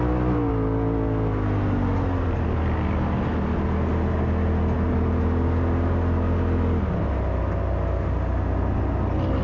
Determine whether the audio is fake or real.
real